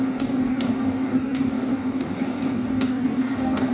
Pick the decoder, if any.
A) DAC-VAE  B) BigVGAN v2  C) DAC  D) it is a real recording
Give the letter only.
C